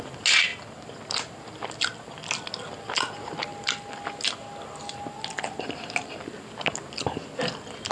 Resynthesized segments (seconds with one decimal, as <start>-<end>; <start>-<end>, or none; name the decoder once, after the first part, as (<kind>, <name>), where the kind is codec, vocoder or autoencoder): none